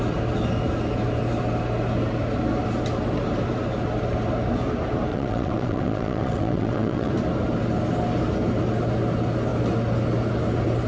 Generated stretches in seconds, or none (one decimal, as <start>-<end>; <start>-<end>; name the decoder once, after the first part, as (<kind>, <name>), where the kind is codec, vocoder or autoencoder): 5.1-7.1 (vocoder, WaveNeXt)